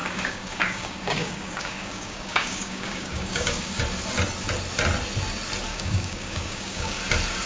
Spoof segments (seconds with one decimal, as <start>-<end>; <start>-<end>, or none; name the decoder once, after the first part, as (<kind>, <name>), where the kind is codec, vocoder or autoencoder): 0.0-3.8 (codec, DAC); 5.7-7.0